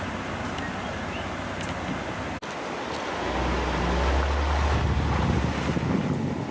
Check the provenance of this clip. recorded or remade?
recorded